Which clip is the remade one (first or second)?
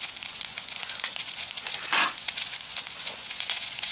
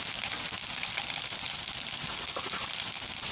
first